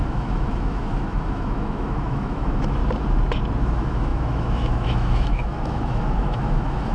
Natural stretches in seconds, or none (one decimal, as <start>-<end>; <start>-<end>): 2.8-3.6